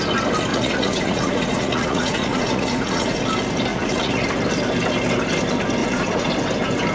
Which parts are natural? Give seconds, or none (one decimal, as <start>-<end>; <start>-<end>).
0.0-0.5; 3.2-3.7; 4.3-5.8; 6.3-6.9